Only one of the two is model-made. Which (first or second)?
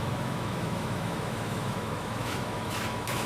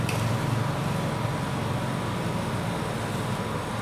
first